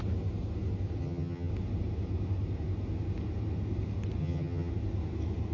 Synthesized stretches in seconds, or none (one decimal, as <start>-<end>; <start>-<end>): 1.0-1.5; 4.2-4.7